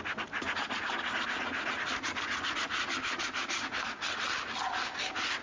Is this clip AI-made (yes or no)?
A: no